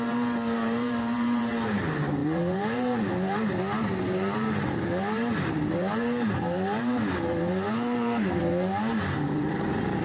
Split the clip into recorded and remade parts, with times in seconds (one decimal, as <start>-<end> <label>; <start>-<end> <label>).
0.0-10.0 remade